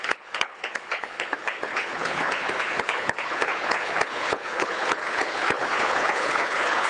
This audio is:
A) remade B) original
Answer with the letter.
A